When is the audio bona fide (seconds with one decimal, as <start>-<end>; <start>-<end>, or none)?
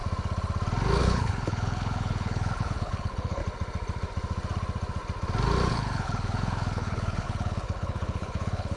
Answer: 0.0-1.0; 3.4-5.7